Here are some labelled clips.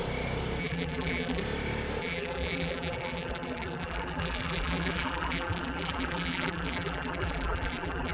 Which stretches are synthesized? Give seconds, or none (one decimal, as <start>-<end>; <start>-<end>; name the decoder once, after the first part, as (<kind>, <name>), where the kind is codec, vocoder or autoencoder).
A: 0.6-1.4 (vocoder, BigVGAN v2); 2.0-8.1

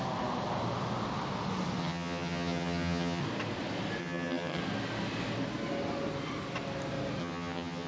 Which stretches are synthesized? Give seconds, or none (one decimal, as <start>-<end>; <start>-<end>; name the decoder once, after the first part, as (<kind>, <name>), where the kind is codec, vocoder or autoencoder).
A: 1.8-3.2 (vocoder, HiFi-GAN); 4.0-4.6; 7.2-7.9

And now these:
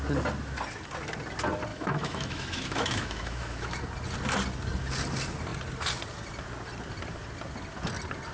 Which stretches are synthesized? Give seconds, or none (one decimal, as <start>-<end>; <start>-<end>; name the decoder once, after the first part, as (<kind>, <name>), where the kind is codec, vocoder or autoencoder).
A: 1.7-3.8 (autoencoder, DAC-VAE)

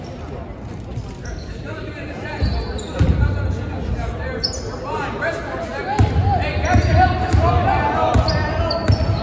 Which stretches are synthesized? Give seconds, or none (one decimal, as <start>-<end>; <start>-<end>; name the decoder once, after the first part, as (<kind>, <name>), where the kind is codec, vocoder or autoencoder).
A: none

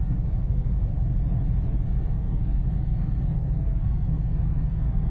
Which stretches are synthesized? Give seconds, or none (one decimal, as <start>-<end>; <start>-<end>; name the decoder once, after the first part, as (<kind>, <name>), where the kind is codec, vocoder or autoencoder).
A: 0.0-0.9 (codec, SNAC); 1.8-5.1

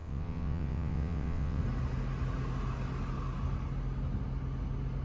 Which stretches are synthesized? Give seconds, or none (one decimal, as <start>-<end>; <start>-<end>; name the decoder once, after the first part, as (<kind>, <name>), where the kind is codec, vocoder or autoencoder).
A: 0.0-1.6 (vocoder, WaveNeXt)

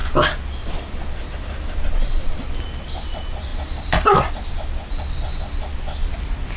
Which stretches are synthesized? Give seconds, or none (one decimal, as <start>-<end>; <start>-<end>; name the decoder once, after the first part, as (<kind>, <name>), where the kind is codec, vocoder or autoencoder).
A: none